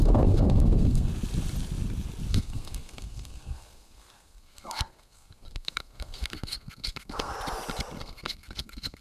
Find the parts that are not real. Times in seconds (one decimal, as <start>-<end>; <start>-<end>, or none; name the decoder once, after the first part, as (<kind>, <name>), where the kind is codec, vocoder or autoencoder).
0.0-1.1 (codec, SNAC); 2.3-7.3; 8.0-9.0